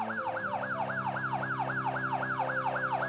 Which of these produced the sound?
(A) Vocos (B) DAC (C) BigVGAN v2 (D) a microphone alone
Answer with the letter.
D